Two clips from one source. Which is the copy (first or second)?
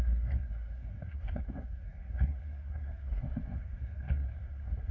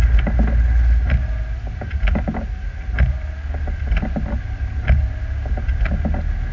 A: first